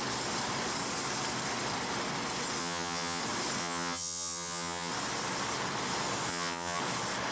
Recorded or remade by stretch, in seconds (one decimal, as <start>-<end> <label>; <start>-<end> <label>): 0.0-2.6 recorded; 2.6-3.2 remade; 3.2-3.6 recorded; 3.6-4.9 remade; 4.9-6.3 recorded; 6.3-6.8 remade; 6.8-7.3 recorded

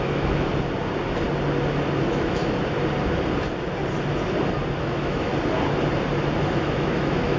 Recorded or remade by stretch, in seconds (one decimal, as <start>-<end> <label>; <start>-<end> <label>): 0.0-0.5 remade; 0.5-2.0 recorded; 2.0-2.4 remade; 2.4-4.8 recorded; 4.8-5.3 remade; 5.3-6.4 recorded; 6.4-7.4 remade

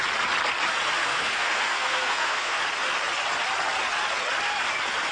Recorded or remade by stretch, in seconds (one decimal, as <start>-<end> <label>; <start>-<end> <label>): 0.0-1.0 recorded; 1.0-2.6 remade; 2.6-5.1 recorded

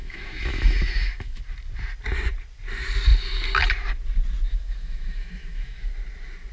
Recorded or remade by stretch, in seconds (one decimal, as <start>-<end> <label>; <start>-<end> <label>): 0.0-1.4 remade; 1.4-4.5 recorded; 4.5-5.9 remade; 5.9-6.5 recorded

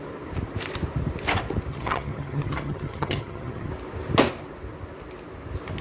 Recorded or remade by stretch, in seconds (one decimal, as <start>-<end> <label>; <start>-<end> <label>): 0.0-1.7 recorded; 1.7-3.7 remade; 3.7-5.8 recorded

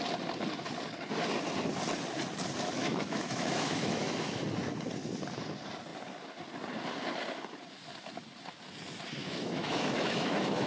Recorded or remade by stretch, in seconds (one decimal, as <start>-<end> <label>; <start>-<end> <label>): 0.0-2.8 recorded; 2.8-4.4 remade; 4.4-9.2 recorded; 9.2-10.7 remade

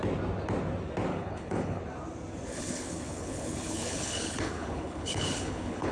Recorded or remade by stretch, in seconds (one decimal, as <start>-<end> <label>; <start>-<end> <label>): 0.0-1.1 recorded; 1.1-1.8 remade; 1.8-2.5 recorded; 2.5-5.9 remade